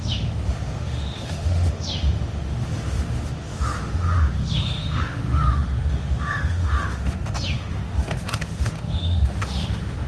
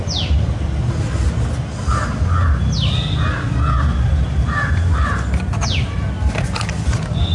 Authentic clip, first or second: second